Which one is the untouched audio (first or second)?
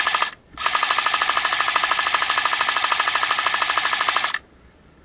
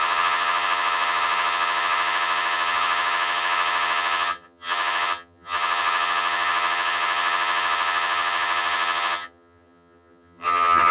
first